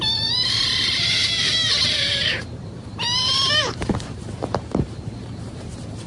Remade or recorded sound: remade